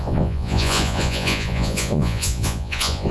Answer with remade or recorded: remade